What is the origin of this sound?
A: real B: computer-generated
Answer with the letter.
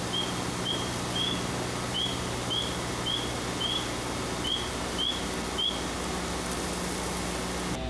A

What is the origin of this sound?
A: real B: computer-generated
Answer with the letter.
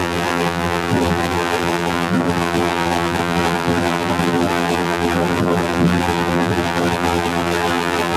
B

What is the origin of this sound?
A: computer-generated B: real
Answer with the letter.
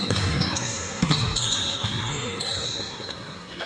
A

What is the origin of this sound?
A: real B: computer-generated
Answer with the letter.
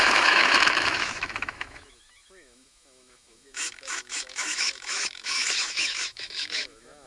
B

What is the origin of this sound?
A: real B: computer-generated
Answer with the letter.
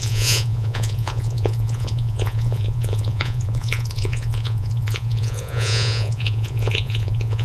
B